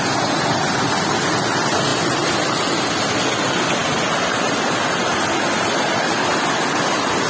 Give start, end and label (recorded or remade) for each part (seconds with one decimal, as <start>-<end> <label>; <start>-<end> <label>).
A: 0.0-7.3 recorded